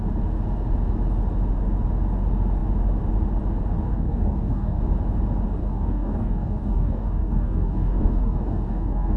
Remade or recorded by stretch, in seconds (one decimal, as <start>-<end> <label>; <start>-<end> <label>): 0.0-3.9 recorded; 3.9-4.8 remade; 4.8-5.6 recorded; 5.6-9.2 remade